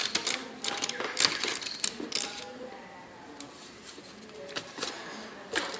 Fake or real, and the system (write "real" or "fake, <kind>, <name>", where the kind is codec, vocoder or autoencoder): real